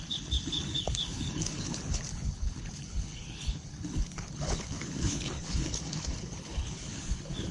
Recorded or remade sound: remade